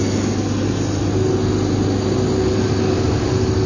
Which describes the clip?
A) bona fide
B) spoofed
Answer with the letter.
A